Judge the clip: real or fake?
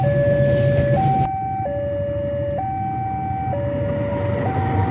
real